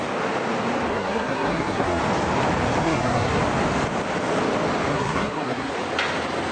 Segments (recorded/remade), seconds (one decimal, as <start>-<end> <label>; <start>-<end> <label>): 0.0-0.9 recorded; 0.9-2.0 remade; 2.0-2.8 recorded; 2.8-3.4 remade; 3.4-4.9 recorded; 4.9-5.7 remade; 5.7-6.5 recorded